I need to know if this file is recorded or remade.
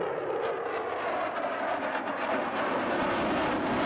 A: recorded